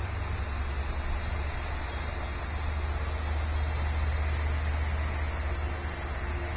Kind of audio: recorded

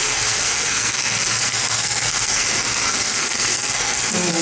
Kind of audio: remade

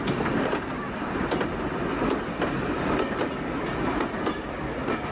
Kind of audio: recorded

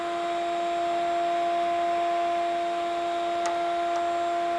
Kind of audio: recorded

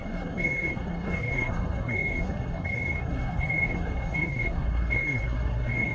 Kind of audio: remade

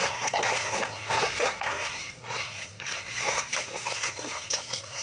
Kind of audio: remade